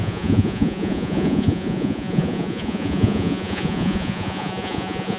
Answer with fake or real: fake